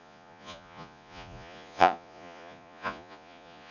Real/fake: fake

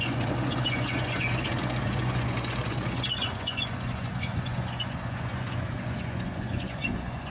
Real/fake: fake